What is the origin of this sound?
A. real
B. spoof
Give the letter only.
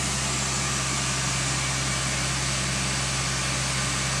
A